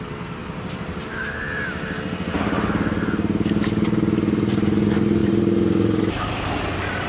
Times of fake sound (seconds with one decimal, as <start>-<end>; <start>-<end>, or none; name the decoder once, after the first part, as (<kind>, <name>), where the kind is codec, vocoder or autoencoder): 0.4-1.6 (vocoder, BigVGAN v2); 5.2-6.5